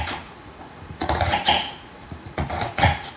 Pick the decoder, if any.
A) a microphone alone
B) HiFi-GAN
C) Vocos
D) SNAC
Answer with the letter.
C